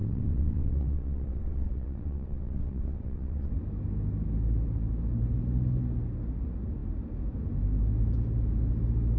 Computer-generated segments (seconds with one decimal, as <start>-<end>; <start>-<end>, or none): 0.0-3.5